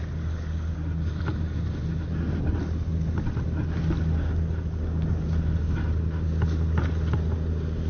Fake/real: real